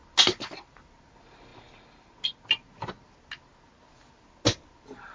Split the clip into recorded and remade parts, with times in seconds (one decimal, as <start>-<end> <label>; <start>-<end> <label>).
0.0-5.1 recorded